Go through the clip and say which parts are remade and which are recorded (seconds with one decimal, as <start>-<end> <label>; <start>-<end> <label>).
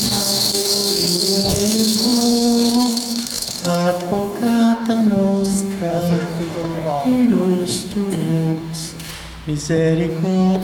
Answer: 0.0-9.1 remade; 9.1-10.1 recorded; 10.1-10.6 remade